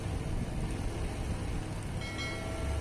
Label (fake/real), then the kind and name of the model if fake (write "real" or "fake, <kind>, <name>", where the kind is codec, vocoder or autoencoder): real